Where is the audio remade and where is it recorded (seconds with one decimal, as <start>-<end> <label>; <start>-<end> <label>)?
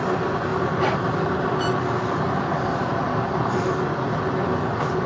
0.0-5.1 recorded